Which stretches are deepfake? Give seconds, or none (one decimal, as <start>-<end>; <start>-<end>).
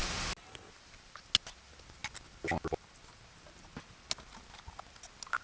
none